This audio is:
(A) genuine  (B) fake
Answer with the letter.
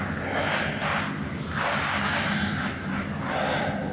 A